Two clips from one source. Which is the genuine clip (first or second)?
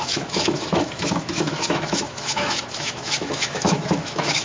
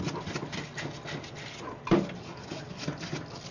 second